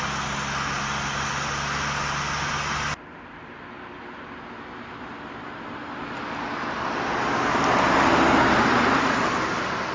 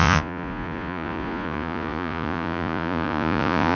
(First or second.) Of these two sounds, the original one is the first